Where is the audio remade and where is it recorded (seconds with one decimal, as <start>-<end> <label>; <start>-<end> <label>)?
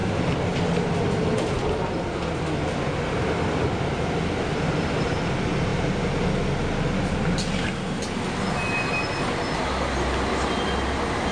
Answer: 0.0-11.3 recorded